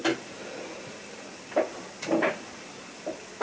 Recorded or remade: recorded